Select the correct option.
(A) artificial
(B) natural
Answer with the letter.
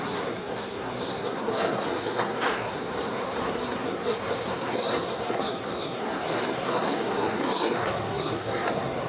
A